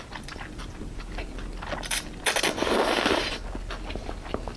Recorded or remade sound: recorded